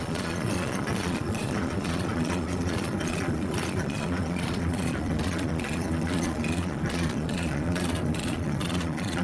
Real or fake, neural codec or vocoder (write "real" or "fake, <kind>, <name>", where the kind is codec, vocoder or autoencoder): fake, vocoder, Vocos